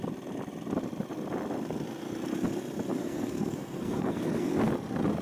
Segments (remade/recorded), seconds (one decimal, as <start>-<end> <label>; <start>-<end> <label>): 0.0-2.9 recorded; 2.9-4.5 remade; 4.5-5.2 recorded